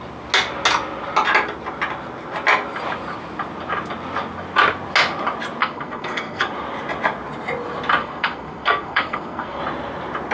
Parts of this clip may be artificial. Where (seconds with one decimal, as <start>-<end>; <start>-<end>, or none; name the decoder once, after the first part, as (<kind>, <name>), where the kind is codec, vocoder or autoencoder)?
5.6-6.5 (codec, SNAC); 8.0-9.6